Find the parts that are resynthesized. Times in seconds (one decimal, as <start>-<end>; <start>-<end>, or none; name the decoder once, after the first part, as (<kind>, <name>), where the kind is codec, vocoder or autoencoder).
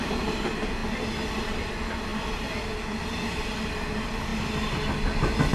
none